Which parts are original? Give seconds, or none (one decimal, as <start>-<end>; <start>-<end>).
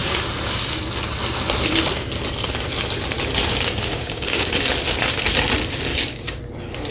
0.0-3.9; 4.5-5.9; 6.4-6.9